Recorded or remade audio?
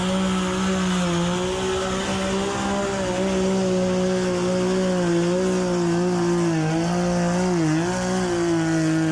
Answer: recorded